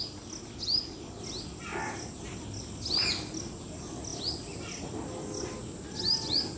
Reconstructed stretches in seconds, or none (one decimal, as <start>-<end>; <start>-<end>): none